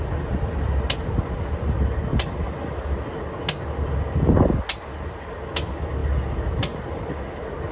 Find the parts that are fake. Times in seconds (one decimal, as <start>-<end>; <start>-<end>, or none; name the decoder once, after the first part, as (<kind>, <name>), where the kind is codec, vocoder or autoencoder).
none